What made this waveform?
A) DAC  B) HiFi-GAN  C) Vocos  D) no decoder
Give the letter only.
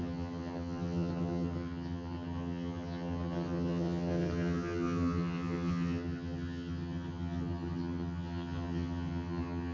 B